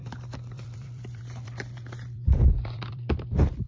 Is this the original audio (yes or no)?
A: no